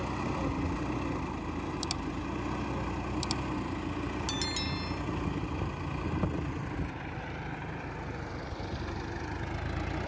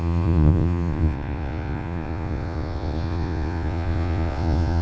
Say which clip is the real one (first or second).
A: first